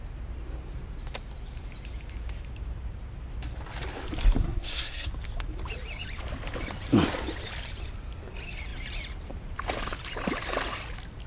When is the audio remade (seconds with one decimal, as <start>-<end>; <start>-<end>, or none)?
4.4-5.1